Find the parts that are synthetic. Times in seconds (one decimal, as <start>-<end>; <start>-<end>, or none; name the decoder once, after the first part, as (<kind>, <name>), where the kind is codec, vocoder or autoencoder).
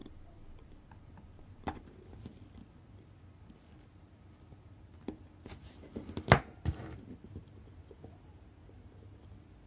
none